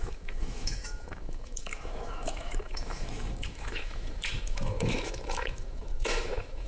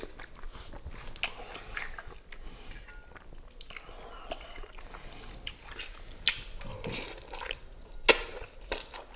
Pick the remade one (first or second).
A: first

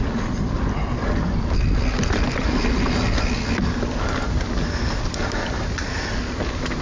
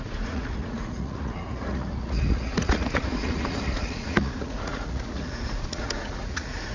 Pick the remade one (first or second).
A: second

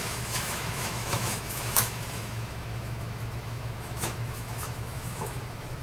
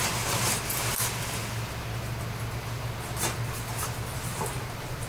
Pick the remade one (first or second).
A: first